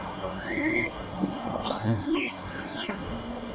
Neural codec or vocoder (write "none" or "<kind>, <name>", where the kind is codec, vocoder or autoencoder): codec, SNAC